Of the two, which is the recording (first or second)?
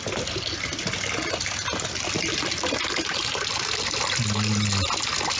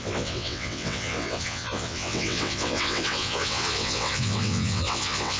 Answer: first